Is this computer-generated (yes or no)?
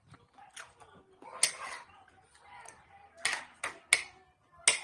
no